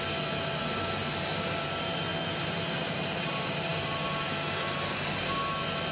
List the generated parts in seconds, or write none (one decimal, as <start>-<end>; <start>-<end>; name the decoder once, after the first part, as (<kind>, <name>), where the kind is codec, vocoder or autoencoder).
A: none